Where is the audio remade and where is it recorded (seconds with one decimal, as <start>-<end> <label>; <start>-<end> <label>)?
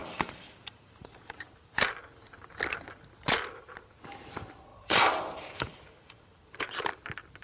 0.0-1.8 remade; 1.8-4.7 recorded; 4.7-6.9 remade; 6.9-7.4 recorded